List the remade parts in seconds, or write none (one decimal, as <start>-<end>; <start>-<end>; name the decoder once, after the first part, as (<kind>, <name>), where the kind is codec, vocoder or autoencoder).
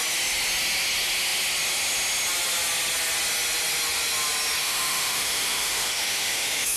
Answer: 4.6-6.8 (autoencoder, DAC-VAE)